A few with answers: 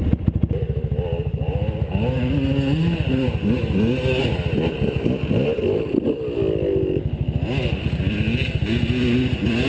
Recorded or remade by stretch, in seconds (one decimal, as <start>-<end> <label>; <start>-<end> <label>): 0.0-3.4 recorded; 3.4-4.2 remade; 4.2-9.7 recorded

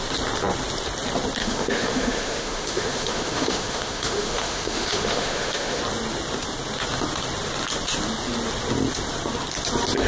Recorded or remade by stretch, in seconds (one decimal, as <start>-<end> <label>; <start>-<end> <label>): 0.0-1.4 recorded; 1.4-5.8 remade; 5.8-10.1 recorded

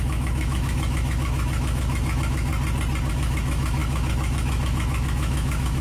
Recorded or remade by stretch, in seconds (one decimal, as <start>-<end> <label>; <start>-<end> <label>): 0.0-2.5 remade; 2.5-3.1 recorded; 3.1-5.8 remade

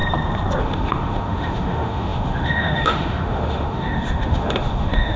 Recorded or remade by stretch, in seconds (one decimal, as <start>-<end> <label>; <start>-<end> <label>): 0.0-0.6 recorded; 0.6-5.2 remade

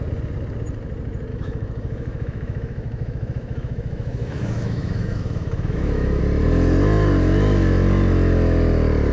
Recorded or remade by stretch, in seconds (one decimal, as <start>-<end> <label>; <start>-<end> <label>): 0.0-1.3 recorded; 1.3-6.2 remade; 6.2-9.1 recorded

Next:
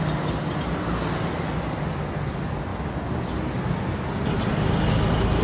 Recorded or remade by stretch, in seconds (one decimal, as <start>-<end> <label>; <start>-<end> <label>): 0.0-5.4 recorded